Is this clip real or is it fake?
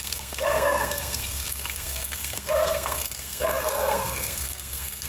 fake